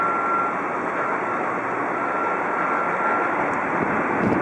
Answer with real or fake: real